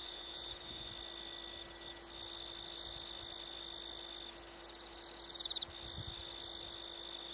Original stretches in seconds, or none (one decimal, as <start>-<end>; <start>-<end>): 0.9-7.3